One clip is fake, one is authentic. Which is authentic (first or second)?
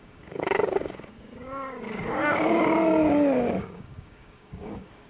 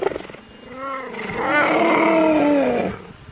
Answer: second